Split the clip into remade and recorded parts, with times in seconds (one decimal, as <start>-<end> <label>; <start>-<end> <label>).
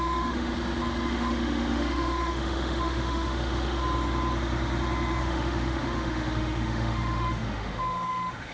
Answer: 0.0-0.5 remade; 0.5-1.1 recorded; 1.1-3.8 remade; 3.8-5.2 recorded; 5.2-8.5 remade